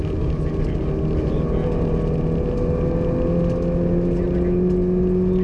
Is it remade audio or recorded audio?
recorded